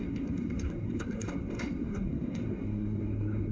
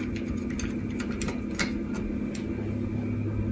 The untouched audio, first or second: second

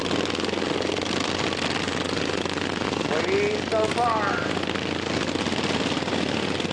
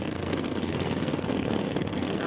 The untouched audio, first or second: first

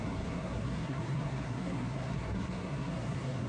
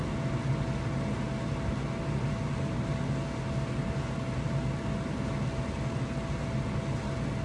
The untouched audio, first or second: second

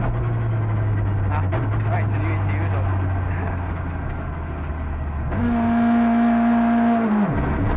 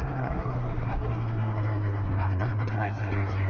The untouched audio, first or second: first